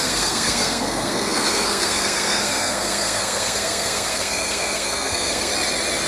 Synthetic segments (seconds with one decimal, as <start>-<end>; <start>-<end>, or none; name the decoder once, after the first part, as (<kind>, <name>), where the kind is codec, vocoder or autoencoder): 0.0-5.5 (codec, SNAC)